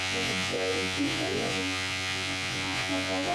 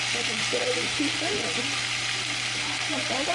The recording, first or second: second